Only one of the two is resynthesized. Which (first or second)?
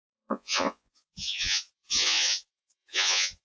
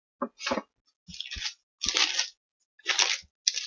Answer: first